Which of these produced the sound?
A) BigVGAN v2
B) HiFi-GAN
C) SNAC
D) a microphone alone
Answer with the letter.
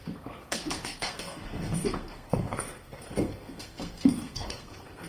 C